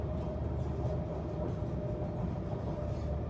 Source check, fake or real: real